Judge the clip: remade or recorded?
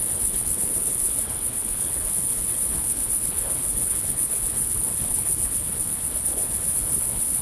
remade